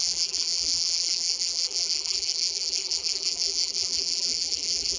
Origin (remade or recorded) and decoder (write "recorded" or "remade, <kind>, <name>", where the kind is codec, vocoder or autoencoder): remade, vocoder, BigVGAN v2